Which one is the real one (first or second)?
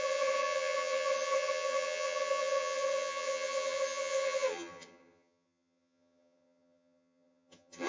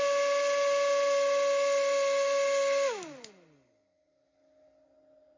second